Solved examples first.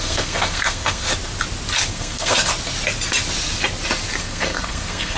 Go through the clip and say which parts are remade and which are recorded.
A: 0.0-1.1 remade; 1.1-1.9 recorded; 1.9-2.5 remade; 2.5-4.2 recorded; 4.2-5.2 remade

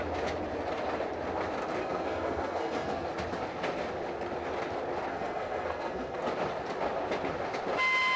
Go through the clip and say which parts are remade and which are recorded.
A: 0.0-1.8 recorded; 1.8-3.1 remade; 3.1-5.1 recorded; 5.1-6.2 remade; 6.2-8.2 recorded

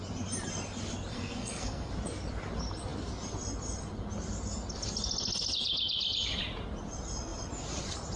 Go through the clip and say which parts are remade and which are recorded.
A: 0.0-1.1 recorded; 1.1-1.9 remade; 1.9-8.2 recorded

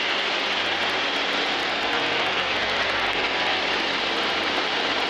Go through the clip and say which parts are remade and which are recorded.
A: 0.0-1.6 recorded; 1.6-3.6 remade; 3.6-5.1 recorded